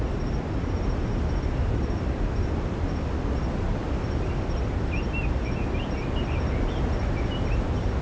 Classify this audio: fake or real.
real